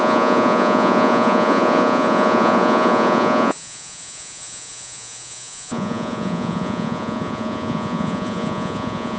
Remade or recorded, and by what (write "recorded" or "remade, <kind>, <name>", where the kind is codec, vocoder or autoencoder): remade, vocoder, Vocos